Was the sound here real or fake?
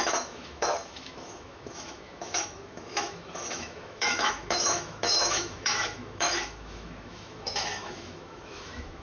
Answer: fake